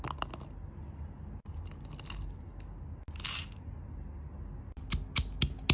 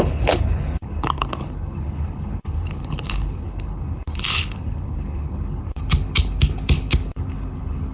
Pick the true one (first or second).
first